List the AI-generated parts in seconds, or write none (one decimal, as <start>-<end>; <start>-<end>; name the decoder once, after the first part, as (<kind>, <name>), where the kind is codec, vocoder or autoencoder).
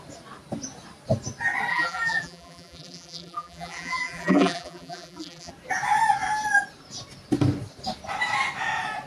1.7-5.5 (vocoder, BigVGAN v2)